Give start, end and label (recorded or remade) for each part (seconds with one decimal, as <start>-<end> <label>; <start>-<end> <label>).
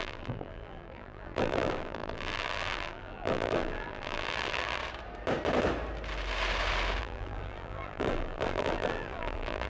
0.0-4.8 remade; 4.8-7.0 recorded; 7.0-9.7 remade